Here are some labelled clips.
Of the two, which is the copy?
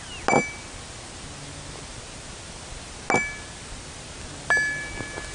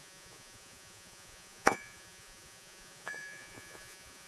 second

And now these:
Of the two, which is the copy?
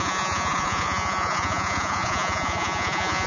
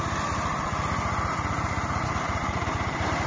first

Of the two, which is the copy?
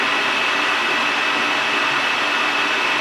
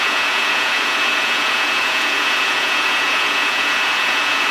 second